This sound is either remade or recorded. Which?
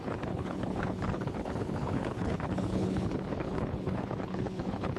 remade